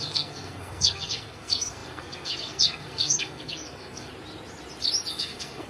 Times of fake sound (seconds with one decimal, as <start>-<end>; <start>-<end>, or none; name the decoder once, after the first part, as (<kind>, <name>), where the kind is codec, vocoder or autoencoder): 0.0-4.1 (codec, SNAC); 5.1-5.7